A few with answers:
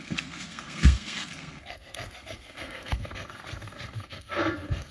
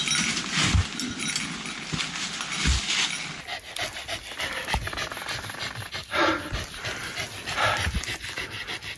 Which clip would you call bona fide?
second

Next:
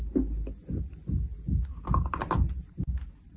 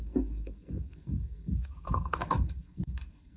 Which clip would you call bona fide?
first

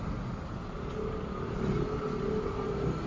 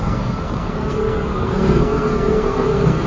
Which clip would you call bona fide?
first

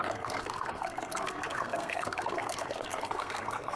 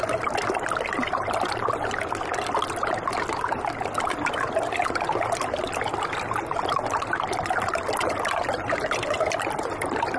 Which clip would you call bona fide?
second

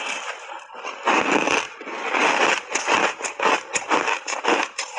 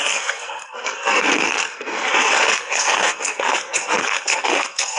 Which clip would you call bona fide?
first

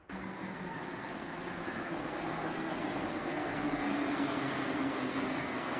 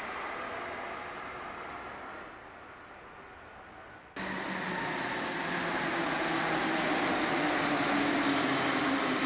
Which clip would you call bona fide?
second